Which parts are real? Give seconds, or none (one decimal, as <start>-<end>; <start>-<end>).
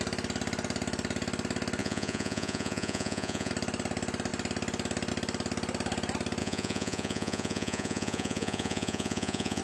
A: 0.0-1.8; 3.5-6.4